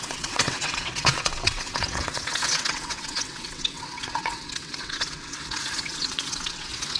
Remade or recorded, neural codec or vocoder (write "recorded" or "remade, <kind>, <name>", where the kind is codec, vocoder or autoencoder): remade, vocoder, WaveNeXt